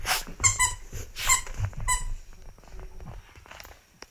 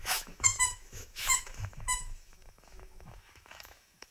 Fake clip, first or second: second